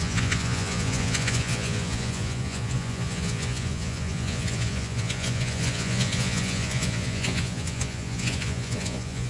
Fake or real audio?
fake